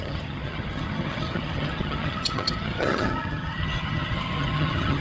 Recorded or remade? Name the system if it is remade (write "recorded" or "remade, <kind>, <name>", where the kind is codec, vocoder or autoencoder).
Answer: remade, vocoder, HiFi-GAN